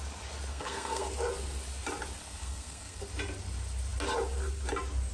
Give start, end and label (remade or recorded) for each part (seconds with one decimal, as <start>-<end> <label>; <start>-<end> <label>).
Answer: 0.0-0.5 recorded; 0.5-1.1 remade; 1.1-2.2 recorded; 2.2-3.0 remade; 3.0-5.1 recorded